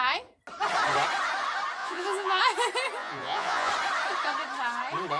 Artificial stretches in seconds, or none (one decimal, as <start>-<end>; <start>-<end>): 1.8-2.4; 3.0-3.7